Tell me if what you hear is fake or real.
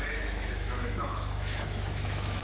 fake